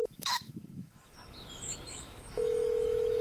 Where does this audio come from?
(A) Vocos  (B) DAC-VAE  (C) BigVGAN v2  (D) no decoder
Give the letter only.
B